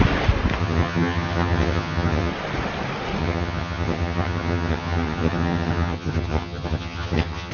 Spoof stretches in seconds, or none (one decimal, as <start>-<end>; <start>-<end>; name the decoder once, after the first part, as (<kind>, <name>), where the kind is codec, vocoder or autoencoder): 0.6-2.3 (vocoder, HiFi-GAN); 3.2-7.5